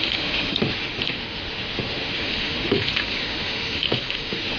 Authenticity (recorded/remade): remade